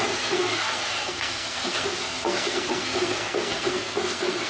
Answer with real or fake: fake